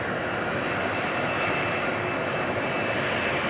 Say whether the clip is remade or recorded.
recorded